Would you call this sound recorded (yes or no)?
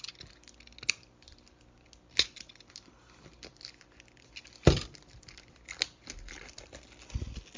yes